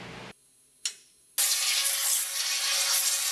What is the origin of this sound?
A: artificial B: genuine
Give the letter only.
B